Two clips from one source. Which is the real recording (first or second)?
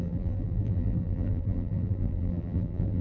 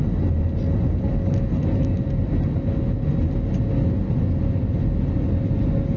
second